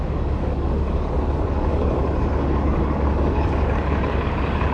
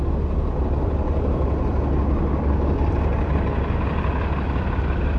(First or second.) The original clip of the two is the second